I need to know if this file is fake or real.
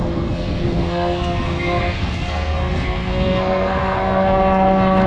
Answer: fake